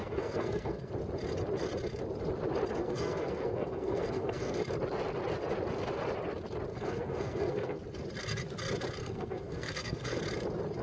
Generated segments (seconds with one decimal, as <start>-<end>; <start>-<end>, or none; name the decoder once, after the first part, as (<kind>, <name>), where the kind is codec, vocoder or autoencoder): 0.0-0.9 (codec, SNAC); 2.8-4.6; 6.7-7.8; 9.0-10.2